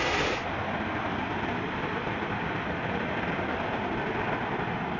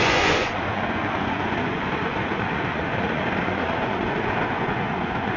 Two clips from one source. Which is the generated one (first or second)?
second